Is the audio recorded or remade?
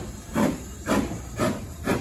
remade